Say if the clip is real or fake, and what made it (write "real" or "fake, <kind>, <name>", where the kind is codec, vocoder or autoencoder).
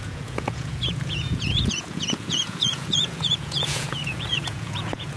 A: fake, vocoder, Vocos